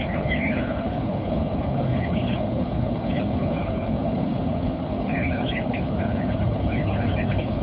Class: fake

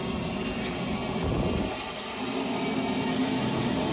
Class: real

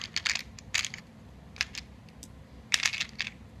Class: real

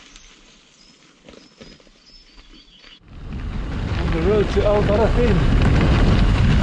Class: real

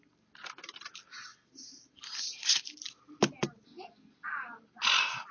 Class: real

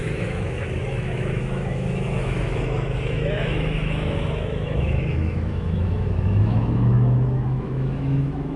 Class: fake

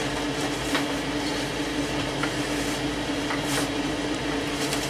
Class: real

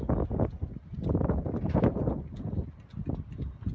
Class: real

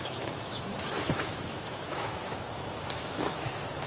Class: fake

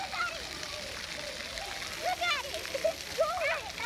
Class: real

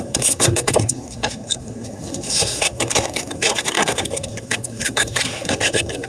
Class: fake